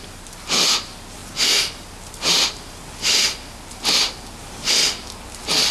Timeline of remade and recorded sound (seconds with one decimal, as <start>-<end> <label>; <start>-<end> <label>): 0.0-5.7 recorded